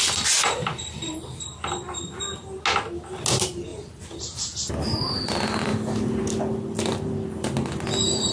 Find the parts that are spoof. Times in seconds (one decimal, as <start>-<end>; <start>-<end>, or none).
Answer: 3.7-4.7